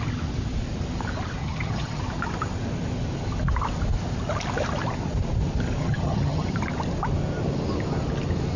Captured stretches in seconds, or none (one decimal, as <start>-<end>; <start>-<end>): 0.0-1.4; 2.0-5.8; 6.5-8.6